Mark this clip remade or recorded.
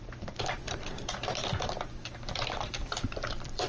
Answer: remade